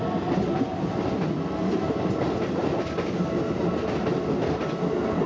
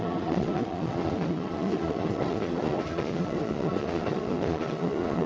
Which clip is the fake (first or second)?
second